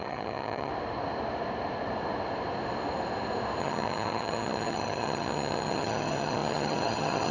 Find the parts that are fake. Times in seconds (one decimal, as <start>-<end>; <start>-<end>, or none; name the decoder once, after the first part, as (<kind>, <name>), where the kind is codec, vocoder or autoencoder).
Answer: 0.0-0.7 (vocoder, HiFi-GAN); 3.6-7.3